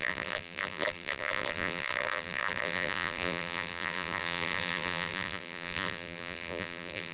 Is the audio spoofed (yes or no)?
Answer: yes